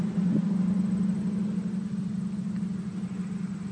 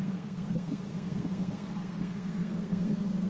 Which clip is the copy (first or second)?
second